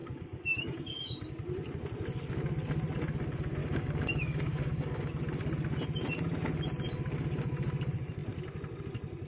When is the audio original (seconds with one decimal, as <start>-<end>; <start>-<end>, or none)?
1.3-3.6; 5.1-9.3